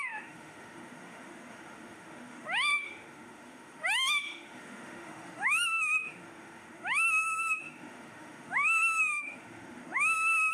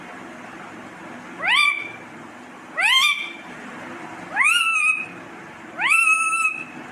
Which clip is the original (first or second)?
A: second